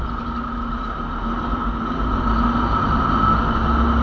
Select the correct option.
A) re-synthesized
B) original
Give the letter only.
B